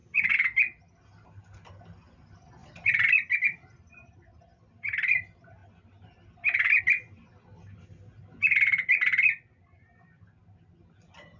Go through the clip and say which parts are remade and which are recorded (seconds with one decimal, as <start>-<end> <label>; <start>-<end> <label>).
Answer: 0.0-11.4 recorded